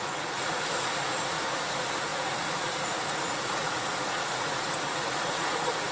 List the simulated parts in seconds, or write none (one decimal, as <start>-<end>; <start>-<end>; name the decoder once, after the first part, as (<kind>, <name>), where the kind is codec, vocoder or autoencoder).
0.0-5.9 (vocoder, Vocos)

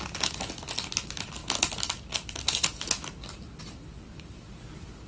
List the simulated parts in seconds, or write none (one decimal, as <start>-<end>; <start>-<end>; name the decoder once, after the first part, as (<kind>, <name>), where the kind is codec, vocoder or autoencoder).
none

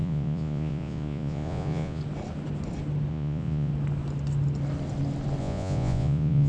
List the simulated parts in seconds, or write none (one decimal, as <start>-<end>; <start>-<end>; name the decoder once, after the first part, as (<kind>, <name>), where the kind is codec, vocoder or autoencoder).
0.0-2.0 (vocoder, Vocos); 3.1-3.7; 5.4-6.5